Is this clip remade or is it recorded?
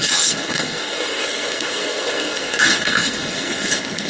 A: remade